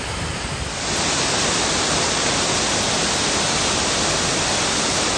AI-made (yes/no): no